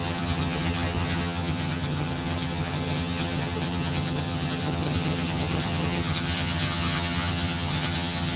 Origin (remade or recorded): remade